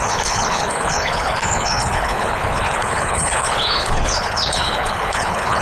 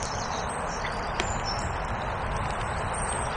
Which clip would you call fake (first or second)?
first